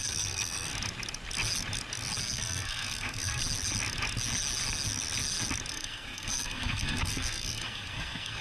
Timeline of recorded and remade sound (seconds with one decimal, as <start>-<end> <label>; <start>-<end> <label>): 0.0-0.7 remade; 0.7-2.2 recorded; 2.2-3.4 remade; 3.4-5.7 recorded; 5.7-8.4 remade